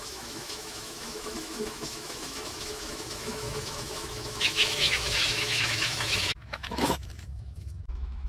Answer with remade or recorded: remade